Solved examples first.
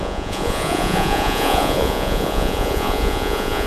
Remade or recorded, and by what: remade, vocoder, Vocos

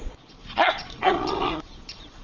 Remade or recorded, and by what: remade, vocoder, Vocos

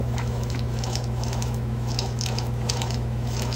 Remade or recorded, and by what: remade, autoencoder, DAC-VAE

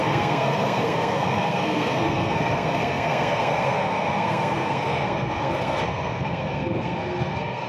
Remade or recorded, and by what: remade, codec, SNAC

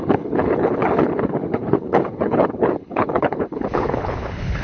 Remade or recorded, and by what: remade, codec, HILCodec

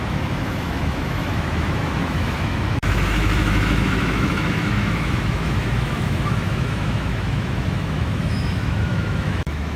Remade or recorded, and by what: remade, autoencoder, DAC-VAE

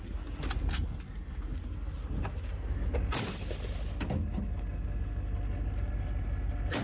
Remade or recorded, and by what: recorded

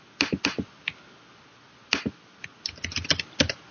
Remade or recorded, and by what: recorded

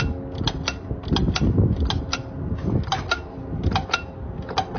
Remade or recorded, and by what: recorded